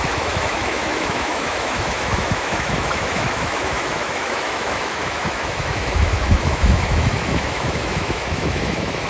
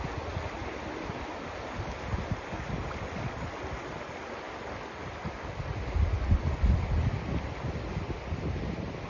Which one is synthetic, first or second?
first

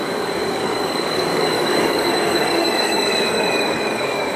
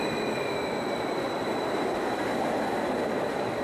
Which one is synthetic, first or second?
first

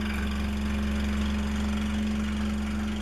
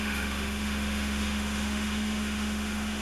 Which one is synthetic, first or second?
second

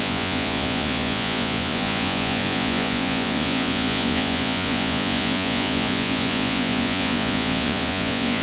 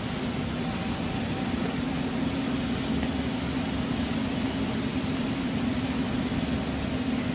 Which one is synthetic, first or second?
first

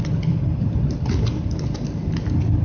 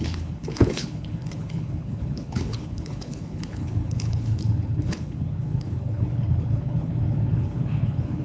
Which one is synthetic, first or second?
second